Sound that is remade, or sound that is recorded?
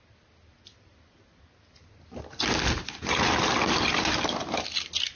recorded